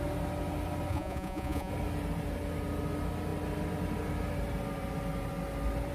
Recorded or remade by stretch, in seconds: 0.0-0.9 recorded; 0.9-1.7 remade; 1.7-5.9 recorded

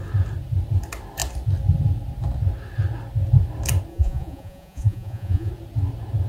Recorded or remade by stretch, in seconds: 0.0-3.9 recorded; 3.9-5.5 remade; 5.5-6.3 recorded

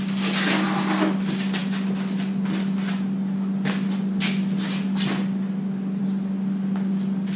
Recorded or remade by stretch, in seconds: 0.0-7.4 recorded

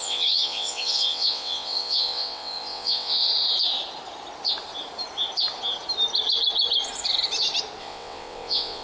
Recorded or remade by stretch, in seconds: 0.0-3.3 remade; 3.3-7.8 recorded; 7.8-8.8 remade